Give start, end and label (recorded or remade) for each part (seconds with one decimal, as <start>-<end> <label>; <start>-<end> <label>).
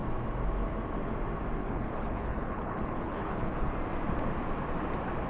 0.0-1.6 recorded; 1.6-3.7 remade; 3.7-5.3 recorded